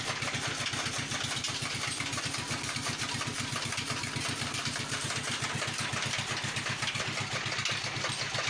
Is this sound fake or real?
real